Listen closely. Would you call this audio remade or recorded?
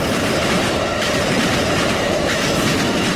remade